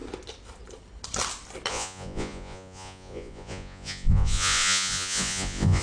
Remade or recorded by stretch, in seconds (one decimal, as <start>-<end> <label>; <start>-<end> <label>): 0.0-1.7 recorded; 1.7-5.8 remade